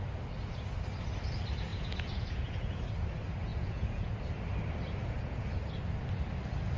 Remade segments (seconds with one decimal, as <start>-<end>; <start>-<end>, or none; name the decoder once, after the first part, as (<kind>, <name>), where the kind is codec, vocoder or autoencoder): 1.7-2.8 (vocoder, Vocos); 3.5-4.1; 5.0-5.5